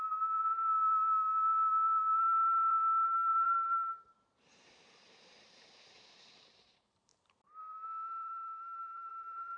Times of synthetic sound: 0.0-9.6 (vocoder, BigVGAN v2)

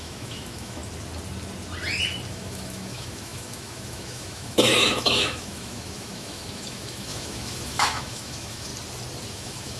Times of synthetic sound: 0.0-0.8 (autoencoder, DAC-VAE); 2.3-8.7; 9.3-9.8

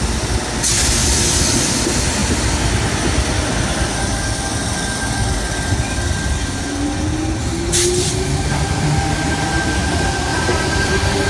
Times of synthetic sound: 10.3-10.9 (vocoder, BigVGAN v2)

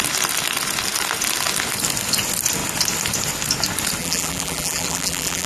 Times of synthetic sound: 4.0-5.5 (vocoder, BigVGAN v2)

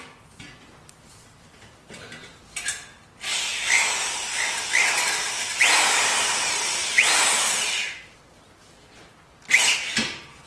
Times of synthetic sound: none

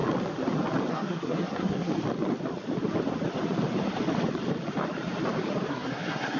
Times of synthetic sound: 0.9-1.9 (codec, SNAC); 5.7-6.4